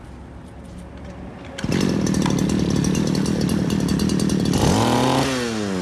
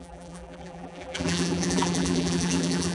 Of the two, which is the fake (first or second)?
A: second